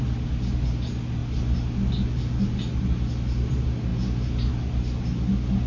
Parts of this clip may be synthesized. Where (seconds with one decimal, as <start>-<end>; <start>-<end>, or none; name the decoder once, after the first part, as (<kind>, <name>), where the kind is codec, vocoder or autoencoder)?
none